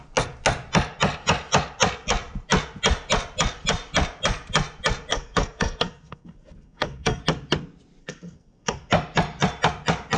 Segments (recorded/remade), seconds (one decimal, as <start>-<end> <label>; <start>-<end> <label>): 0.0-5.1 recorded; 5.1-7.2 remade; 7.2-8.0 recorded; 8.0-8.9 remade; 8.9-10.2 recorded